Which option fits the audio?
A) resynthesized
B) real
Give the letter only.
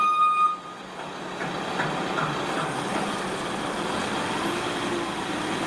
B